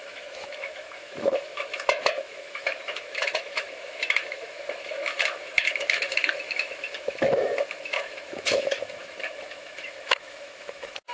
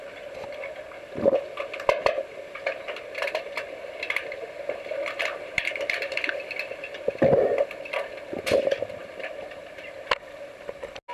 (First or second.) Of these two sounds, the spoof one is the first